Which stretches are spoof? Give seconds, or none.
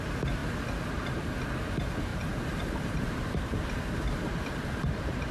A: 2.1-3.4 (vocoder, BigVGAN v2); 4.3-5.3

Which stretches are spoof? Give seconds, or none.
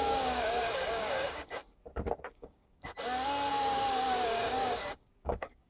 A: 0.0-1.6 (codec, DAC); 2.3-2.9; 3.5-5.7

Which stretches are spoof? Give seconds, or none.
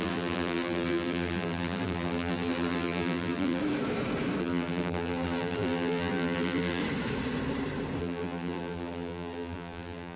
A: 0.0-3.6 (vocoder, BigVGAN v2); 4.4-6.8; 8.0-10.2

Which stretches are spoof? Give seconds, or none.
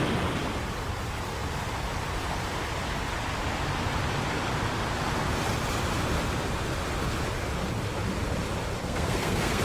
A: 8.8-9.6 (codec, SNAC)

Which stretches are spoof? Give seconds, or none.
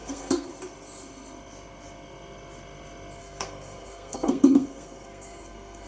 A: 0.0-0.5 (codec, SNAC); 3.2-5.9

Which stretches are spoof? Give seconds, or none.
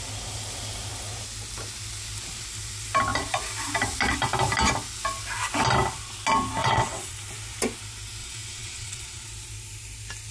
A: 6.6-7.2 (vocoder, WaveNeXt); 8.2-9.3